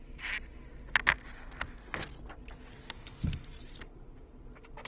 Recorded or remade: recorded